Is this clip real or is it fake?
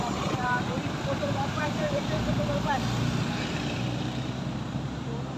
fake